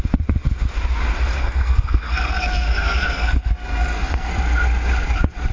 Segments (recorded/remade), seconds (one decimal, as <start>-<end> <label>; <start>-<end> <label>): 0.0-1.3 recorded; 1.3-4.3 remade; 4.3-5.5 recorded